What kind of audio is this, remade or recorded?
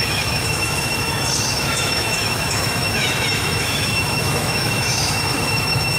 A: remade